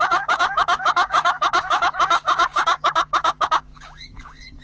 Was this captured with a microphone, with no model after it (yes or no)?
no